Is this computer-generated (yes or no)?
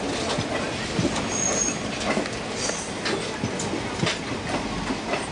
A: no